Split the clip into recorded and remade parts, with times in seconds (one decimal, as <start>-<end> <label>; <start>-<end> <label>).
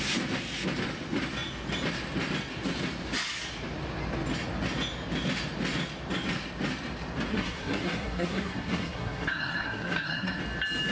0.0-7.3 recorded; 7.3-10.4 remade; 10.4-10.9 recorded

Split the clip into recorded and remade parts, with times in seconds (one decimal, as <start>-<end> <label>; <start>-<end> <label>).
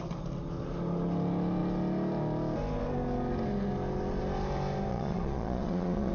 0.0-4.9 recorded; 4.9-6.1 remade